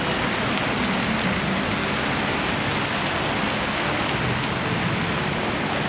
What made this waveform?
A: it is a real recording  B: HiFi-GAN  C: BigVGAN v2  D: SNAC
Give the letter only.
A